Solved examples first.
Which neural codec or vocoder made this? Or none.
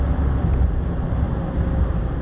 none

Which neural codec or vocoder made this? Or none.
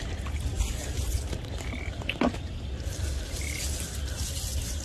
none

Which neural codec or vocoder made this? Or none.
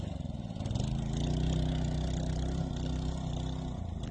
none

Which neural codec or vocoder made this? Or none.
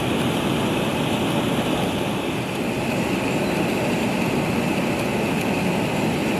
none